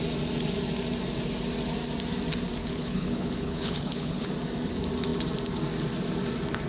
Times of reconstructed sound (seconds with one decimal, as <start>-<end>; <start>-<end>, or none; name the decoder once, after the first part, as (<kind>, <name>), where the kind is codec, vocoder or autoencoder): 2.6-4.3 (codec, HILCodec)